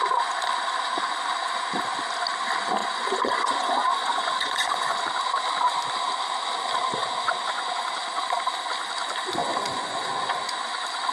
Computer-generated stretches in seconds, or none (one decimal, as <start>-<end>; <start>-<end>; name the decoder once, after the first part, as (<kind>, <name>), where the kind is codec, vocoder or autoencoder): 2.8-5.0 (vocoder, Vocos); 7.0-7.7; 9.4-10.5